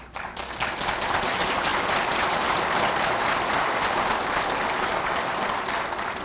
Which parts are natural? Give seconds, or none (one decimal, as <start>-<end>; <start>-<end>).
0.0-1.7; 3.9-6.2